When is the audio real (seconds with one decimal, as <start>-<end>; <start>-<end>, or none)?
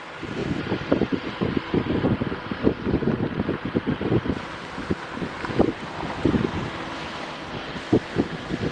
0.0-8.7